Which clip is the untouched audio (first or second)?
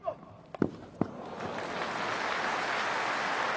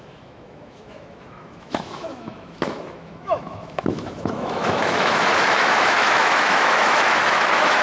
first